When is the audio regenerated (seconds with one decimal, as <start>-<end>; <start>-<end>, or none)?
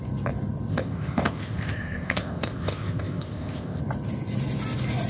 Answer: 0.7-3.8